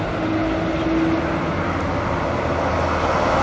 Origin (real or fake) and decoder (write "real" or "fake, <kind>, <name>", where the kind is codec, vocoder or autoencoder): real